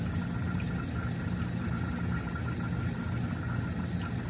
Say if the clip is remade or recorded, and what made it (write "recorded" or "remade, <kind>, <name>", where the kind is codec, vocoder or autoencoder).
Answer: recorded